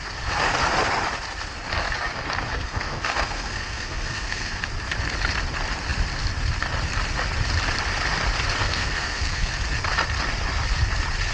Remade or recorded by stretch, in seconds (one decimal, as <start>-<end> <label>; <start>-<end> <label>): 0.0-2.5 recorded; 2.5-4.6 remade; 4.6-8.6 recorded; 8.6-9.5 remade; 9.5-11.3 recorded